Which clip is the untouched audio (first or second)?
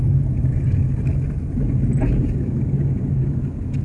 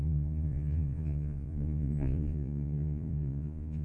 first